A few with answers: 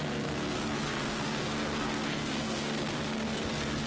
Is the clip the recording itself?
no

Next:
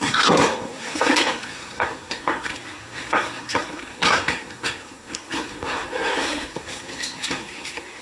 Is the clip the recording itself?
no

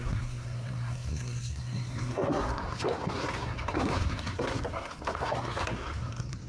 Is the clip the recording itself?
no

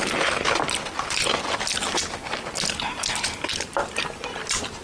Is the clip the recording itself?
yes